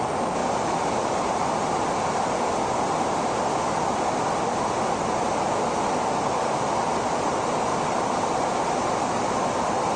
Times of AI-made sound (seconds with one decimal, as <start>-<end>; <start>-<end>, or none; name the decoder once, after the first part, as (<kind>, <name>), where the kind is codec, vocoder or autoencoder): none